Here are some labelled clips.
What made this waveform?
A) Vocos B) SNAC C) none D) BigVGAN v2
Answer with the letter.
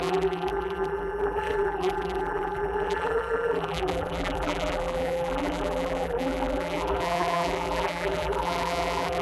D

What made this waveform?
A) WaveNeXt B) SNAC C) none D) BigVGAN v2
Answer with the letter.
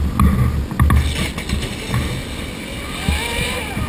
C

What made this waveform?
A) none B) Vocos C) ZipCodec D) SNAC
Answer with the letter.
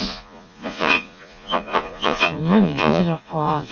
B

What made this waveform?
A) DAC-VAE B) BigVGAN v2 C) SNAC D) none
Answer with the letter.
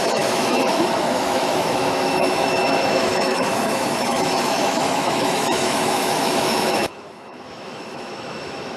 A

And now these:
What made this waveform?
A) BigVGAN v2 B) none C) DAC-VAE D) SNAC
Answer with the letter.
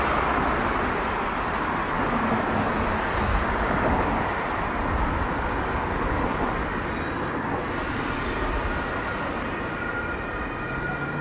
B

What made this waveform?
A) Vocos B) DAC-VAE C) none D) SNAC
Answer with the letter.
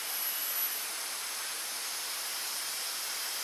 C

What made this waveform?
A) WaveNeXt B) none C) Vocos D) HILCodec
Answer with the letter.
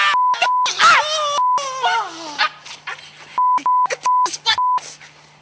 B